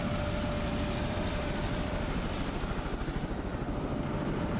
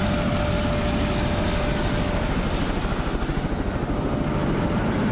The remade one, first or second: first